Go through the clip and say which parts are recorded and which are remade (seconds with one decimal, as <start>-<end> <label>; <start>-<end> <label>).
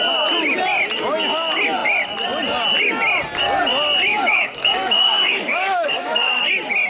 0.0-4.1 recorded; 4.1-6.4 remade; 6.4-6.9 recorded